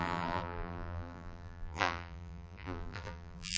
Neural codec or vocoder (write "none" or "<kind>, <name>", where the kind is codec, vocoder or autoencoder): vocoder, BigVGAN v2